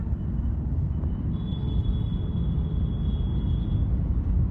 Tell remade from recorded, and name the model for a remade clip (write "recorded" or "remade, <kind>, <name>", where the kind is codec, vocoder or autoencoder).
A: recorded